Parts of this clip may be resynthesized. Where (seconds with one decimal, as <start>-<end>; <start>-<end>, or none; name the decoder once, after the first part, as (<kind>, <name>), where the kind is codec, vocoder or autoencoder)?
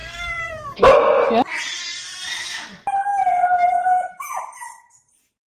0.0-0.8 (codec, SNAC)